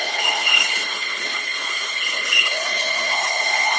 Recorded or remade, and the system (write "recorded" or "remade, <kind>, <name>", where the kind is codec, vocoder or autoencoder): remade, codec, HILCodec